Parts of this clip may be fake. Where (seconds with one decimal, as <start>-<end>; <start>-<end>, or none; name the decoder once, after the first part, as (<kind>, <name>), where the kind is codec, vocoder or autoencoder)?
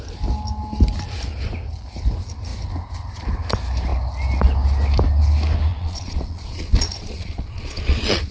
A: 5.7-8.3 (vocoder, Vocos)